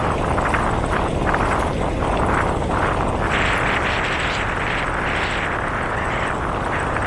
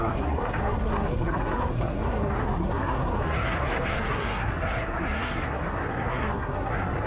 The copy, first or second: second